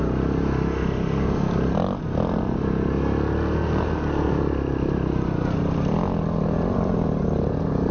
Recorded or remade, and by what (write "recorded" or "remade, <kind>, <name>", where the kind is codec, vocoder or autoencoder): recorded